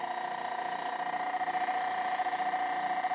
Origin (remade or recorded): recorded